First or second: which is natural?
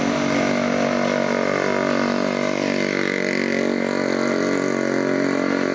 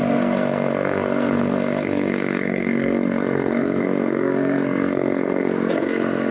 first